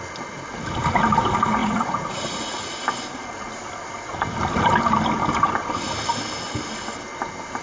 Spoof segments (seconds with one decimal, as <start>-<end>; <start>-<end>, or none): 1.6-2.7